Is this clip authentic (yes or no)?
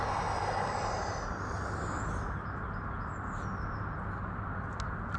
yes